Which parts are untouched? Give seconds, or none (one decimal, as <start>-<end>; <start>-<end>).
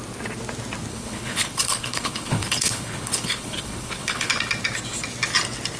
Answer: 0.0-0.9; 4.3-5.8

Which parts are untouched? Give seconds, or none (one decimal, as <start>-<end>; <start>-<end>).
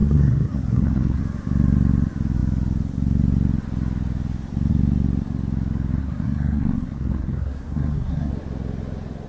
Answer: 1.2-6.0; 8.3-9.3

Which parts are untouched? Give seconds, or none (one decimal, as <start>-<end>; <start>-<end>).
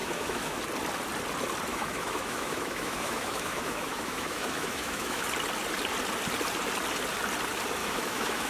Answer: 0.6-1.7; 5.2-7.8